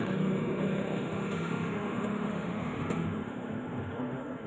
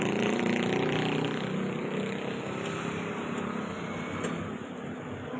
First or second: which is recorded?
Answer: second